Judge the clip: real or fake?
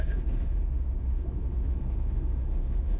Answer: fake